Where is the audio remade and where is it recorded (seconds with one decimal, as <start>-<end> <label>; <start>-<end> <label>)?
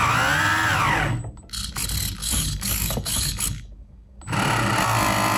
0.0-2.2 recorded; 2.2-4.2 remade; 4.2-5.4 recorded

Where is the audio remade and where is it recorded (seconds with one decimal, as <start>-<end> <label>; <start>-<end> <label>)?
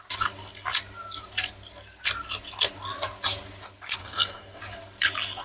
0.0-4.0 recorded; 4.0-4.6 remade; 4.6-5.4 recorded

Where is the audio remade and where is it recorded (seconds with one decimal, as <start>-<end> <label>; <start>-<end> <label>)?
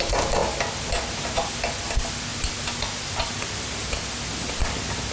0.0-5.1 recorded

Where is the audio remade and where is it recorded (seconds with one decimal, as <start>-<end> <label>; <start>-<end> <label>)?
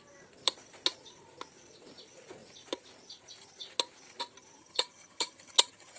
0.0-4.6 recorded; 4.6-6.0 remade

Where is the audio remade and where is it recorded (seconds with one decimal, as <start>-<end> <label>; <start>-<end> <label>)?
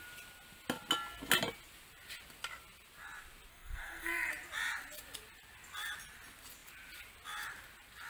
0.0-3.5 recorded; 3.5-4.3 remade; 4.3-8.1 recorded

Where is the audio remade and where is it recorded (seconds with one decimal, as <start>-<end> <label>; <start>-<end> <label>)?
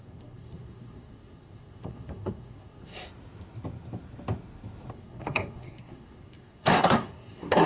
0.0-2.9 remade; 2.9-4.9 recorded; 4.9-7.7 remade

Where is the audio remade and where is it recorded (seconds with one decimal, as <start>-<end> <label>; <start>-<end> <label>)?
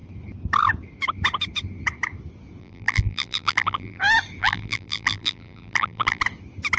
0.0-2.6 recorded; 2.6-4.0 remade; 4.0-4.4 recorded; 4.4-6.2 remade; 6.2-6.8 recorded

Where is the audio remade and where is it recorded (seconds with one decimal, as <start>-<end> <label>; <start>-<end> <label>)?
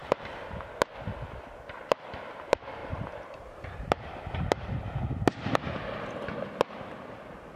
0.0-2.8 recorded; 2.8-4.9 remade; 4.9-7.6 recorded